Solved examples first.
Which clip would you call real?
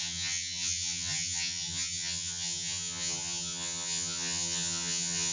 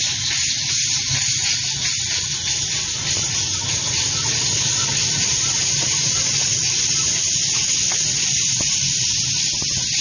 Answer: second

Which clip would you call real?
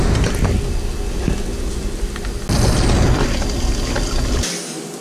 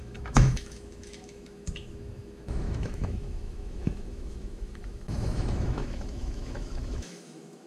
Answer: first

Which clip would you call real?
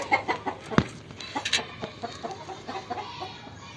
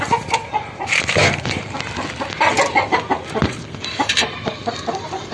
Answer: first